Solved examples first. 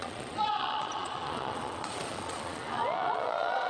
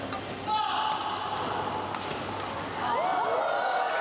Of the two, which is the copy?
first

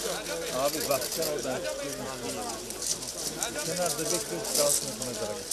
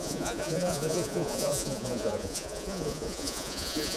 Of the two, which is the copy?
second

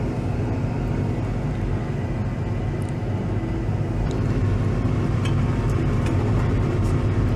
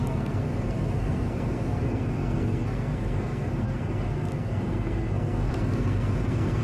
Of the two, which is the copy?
second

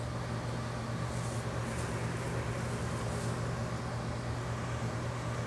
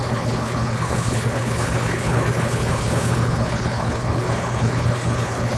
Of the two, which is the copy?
second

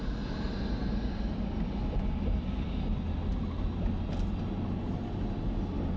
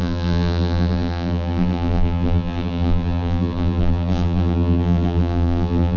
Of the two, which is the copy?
second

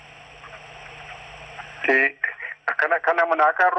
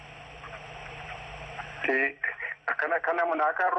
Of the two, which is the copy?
second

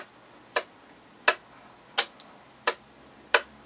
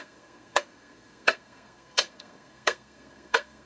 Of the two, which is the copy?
second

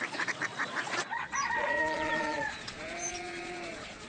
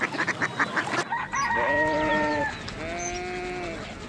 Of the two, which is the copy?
first